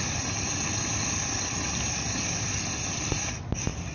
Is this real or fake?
real